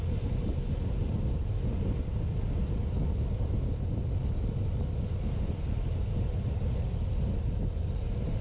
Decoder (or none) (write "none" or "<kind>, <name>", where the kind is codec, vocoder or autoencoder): none